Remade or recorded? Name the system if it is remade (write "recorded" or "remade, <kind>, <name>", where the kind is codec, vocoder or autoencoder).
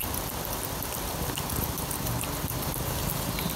remade, vocoder, BigVGAN v2